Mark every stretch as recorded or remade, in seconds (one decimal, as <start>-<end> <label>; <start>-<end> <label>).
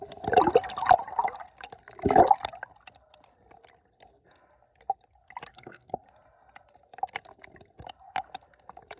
0.0-5.5 recorded; 5.5-6.0 remade; 6.0-9.0 recorded